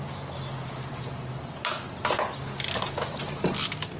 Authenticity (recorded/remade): recorded